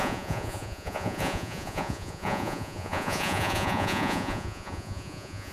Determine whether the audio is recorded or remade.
remade